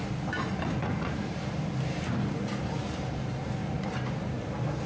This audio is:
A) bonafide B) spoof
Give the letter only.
B